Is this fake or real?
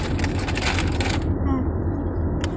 real